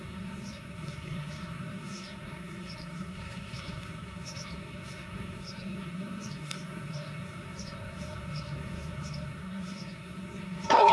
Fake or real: fake